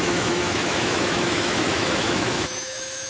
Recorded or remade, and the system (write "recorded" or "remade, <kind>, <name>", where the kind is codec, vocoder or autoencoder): remade, autoencoder, DAC-VAE